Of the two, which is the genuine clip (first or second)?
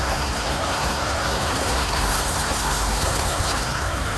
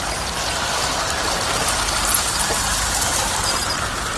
second